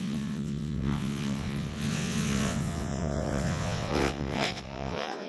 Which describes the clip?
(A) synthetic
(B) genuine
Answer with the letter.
A